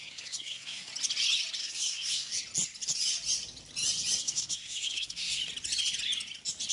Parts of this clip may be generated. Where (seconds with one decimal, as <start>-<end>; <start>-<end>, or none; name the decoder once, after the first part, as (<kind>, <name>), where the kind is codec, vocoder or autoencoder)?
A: 0.0-0.9 (codec, SNAC); 1.6-2.3; 4.2-5.4